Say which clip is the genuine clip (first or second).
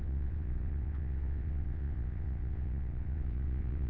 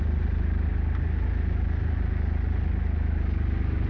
second